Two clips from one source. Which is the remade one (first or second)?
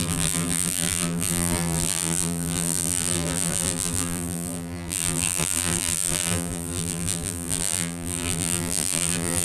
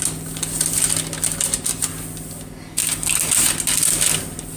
first